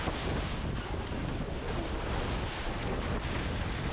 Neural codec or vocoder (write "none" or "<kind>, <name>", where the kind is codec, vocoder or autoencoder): none